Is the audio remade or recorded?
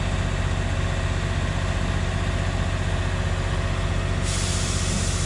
recorded